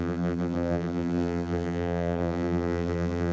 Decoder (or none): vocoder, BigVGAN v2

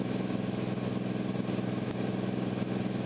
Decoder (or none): none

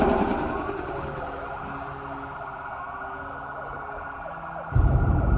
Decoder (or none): none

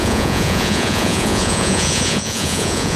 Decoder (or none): vocoder, Vocos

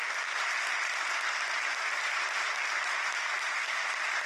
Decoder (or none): none